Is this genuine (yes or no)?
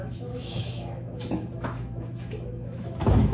no